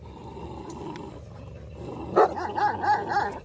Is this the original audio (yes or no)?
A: yes